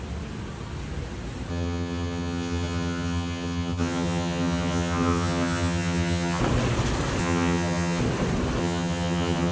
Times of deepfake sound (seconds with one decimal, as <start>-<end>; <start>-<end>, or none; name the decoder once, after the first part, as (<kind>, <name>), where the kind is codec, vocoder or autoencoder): 1.5-6.4 (vocoder, HiFi-GAN); 7.2-8.0; 8.6-9.5